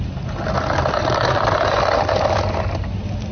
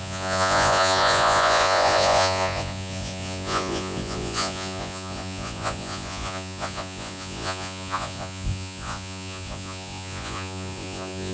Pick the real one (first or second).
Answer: first